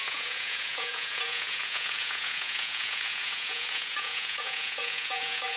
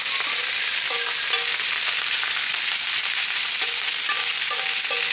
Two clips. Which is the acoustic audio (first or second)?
second